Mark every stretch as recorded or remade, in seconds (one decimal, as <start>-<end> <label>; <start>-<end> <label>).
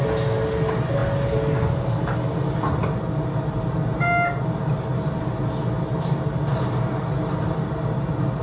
0.0-8.4 recorded